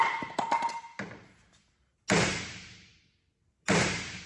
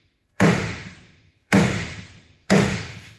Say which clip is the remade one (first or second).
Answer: second